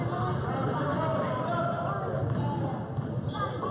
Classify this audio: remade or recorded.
recorded